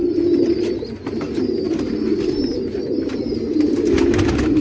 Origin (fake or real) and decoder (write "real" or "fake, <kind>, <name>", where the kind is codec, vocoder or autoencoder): real